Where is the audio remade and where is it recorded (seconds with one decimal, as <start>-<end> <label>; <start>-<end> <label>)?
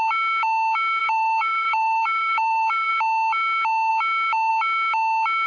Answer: 0.0-1.0 recorded; 1.0-2.9 remade; 2.9-5.5 recorded